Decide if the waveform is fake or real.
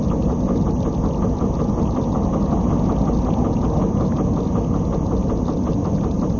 real